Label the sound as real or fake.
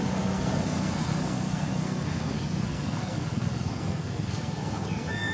fake